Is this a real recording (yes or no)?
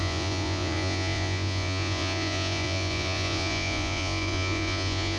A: no